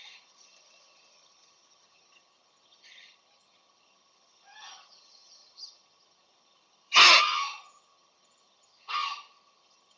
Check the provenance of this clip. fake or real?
fake